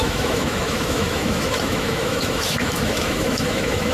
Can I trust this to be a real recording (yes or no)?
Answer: no